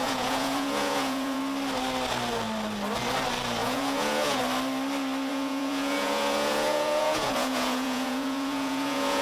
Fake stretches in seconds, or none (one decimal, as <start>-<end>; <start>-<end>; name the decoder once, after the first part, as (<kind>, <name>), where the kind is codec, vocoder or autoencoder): 0.0-1.4 (vocoder, Vocos); 3.6-4.4; 5.3-9.2